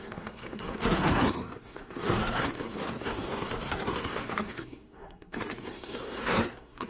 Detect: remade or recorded remade